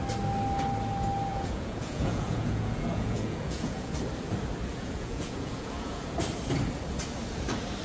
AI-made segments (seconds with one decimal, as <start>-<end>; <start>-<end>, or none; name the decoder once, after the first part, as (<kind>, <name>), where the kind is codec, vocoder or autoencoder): 1.3-3.9 (vocoder, Vocos); 4.7-6.0